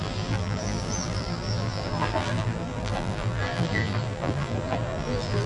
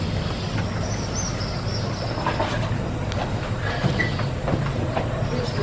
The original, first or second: second